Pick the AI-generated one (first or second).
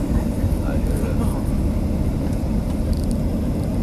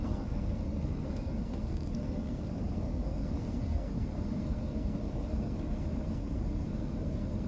second